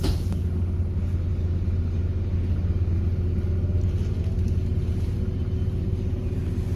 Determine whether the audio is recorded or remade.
recorded